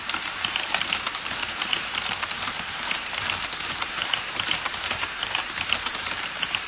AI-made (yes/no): yes